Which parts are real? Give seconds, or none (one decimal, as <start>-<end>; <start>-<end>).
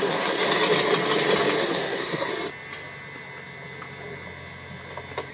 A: 0.4-1.6; 2.3-5.3